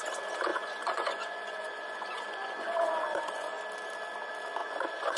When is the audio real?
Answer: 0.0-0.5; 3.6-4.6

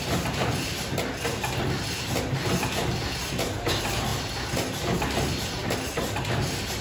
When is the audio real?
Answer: 0.0-6.8

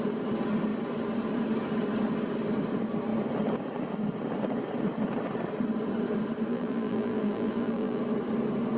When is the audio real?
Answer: 0.0-6.5; 8.0-8.8

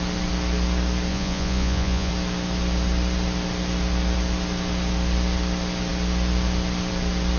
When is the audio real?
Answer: 0.0-1.1; 2.1-7.4